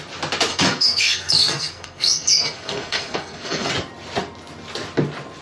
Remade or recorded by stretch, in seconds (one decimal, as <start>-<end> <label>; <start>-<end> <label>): 0.0-0.5 recorded; 0.5-3.7 remade; 3.7-5.4 recorded